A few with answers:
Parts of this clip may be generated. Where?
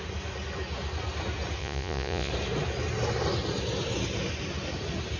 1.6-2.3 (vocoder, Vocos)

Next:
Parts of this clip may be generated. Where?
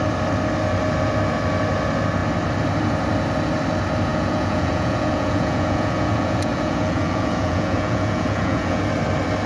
4.1-8.8 (vocoder, Vocos)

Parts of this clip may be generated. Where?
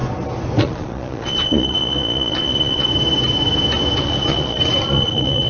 0.6-2.9 (vocoder, Vocos); 4.0-5.5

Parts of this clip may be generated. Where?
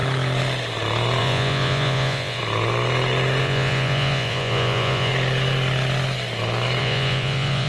1.2-2.4 (vocoder, Vocos); 3.4-5.1; 6.8-7.7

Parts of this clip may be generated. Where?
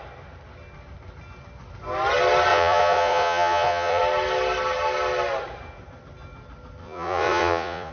2.5-4.0 (vocoder, Vocos); 6.8-7.9